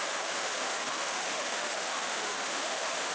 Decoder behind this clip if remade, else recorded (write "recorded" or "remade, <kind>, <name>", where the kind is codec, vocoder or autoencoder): remade, autoencoder, DAC-VAE